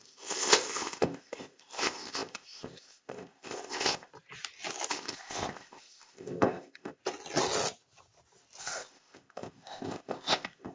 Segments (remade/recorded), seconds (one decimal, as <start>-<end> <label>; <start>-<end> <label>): 0.0-4.1 remade; 4.1-4.9 recorded; 4.9-7.0 remade; 7.0-8.6 recorded; 8.6-10.7 remade